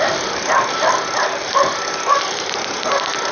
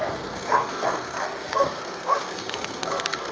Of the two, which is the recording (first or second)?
first